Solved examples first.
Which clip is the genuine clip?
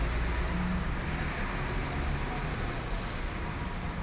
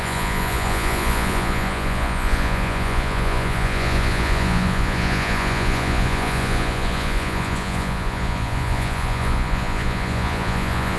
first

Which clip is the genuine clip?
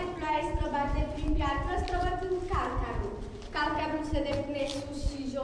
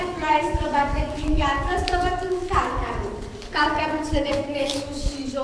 first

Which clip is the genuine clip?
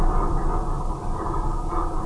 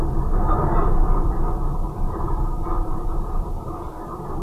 first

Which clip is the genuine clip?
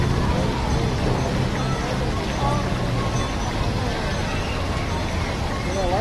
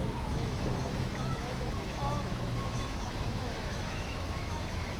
first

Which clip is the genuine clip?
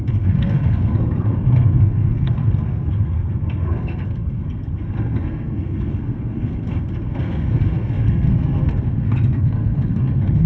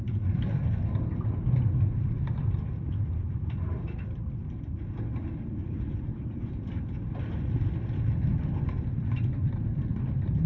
second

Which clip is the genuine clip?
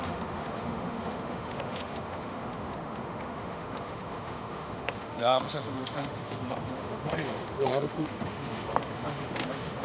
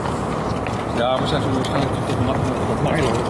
second